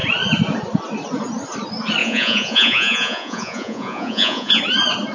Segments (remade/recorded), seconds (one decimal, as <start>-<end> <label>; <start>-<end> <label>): 0.0-2.0 recorded; 2.0-4.6 remade; 4.6-5.1 recorded